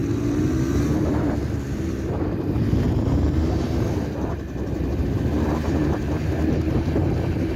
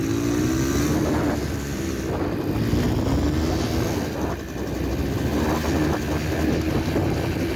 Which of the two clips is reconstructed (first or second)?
first